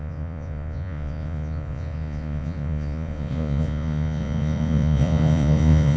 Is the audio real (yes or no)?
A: no